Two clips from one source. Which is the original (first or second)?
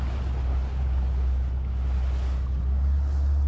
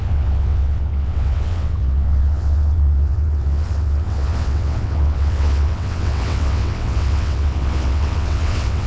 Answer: first